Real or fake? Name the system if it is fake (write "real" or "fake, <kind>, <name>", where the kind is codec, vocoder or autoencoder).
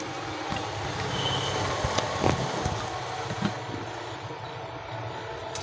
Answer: real